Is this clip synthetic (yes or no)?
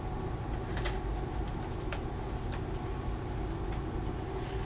no